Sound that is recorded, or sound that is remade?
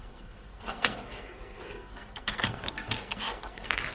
remade